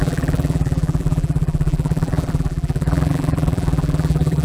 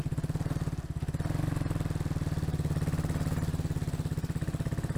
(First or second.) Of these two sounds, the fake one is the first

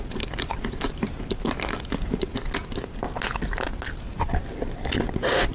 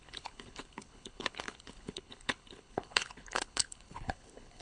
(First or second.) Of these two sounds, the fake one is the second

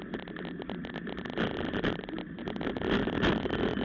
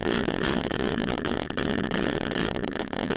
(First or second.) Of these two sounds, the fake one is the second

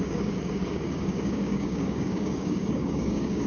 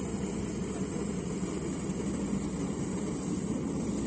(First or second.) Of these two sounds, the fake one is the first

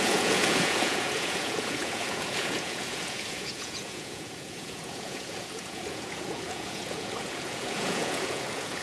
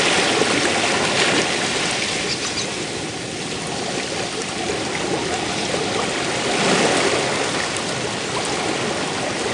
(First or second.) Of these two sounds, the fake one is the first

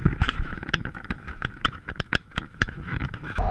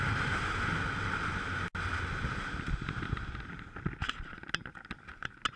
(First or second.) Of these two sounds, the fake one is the first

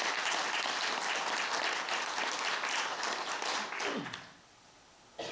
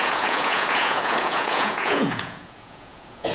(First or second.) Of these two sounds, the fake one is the second